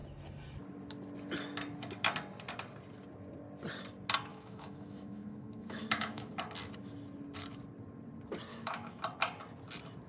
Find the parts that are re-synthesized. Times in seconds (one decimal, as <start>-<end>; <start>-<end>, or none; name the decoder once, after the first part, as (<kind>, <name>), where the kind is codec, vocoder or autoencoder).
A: 4.3-6.3 (autoencoder, DAC-VAE); 8.5-9.0